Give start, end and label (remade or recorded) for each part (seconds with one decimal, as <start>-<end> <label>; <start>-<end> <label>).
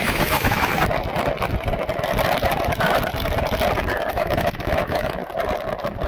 0.0-0.7 remade; 0.7-4.1 recorded; 4.1-5.2 remade; 5.2-6.1 recorded